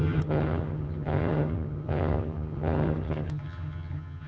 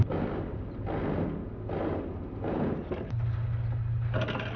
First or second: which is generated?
first